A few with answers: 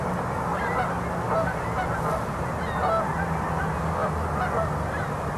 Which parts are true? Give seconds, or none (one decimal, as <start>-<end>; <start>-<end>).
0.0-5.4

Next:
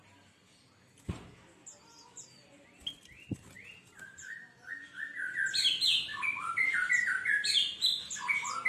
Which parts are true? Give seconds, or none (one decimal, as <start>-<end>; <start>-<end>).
0.0-6.1; 6.9-8.7

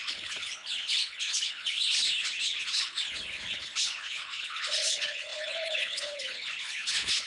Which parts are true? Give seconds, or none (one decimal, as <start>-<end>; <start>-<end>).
none

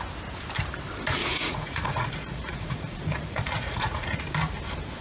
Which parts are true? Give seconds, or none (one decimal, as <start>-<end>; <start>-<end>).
0.0-1.2; 4.2-5.0

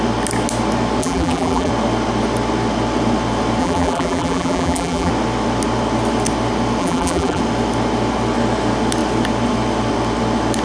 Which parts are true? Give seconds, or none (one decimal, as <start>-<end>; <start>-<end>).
0.0-1.0; 1.7-3.6; 5.1-6.8; 7.4-10.6

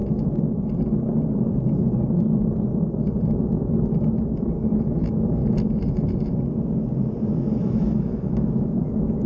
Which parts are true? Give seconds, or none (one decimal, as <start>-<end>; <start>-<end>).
0.0-3.3; 5.4-7.3